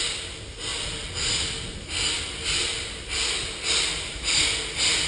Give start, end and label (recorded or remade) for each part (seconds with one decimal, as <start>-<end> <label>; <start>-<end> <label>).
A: 0.0-5.1 recorded